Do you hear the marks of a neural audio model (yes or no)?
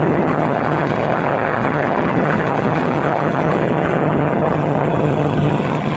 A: yes